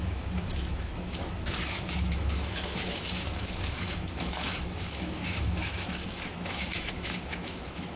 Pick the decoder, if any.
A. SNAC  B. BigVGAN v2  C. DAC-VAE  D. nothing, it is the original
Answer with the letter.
C